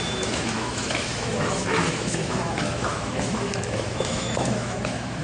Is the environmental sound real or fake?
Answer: fake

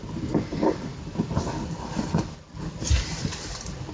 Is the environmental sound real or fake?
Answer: real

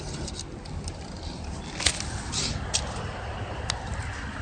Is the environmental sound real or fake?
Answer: real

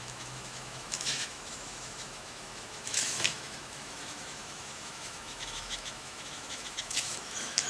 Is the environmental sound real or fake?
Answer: fake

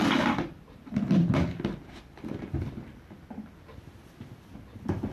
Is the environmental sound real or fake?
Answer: real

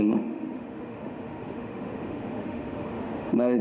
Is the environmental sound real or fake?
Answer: fake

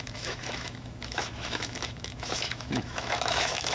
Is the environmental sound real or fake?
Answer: fake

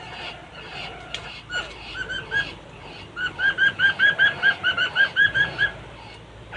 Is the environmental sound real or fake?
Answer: real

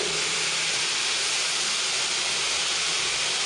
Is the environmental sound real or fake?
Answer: real